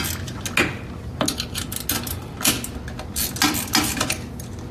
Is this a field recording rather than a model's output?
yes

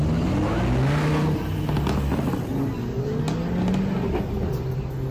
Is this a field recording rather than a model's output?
yes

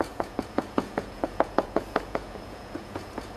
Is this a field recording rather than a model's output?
no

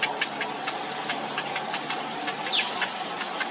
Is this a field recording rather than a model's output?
yes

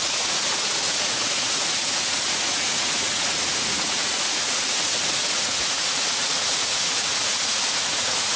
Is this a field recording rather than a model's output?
no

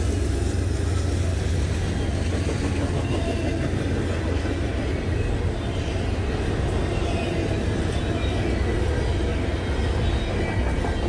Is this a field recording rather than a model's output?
yes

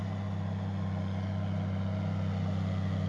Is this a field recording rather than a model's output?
yes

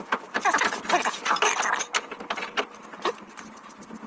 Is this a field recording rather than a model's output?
yes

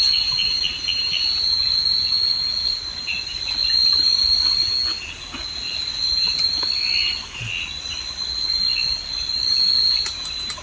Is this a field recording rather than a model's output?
yes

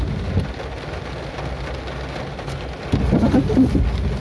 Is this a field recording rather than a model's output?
yes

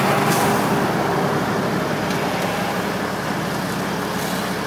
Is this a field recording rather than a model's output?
yes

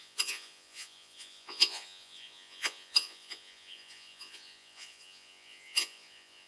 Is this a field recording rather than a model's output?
no